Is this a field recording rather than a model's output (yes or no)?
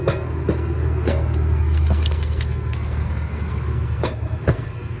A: no